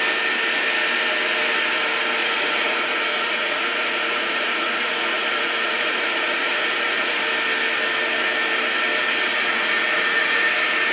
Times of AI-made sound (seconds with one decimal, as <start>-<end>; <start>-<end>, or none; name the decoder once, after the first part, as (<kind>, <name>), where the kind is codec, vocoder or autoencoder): 2.2-7.2 (vocoder, Vocos); 9.3-10.5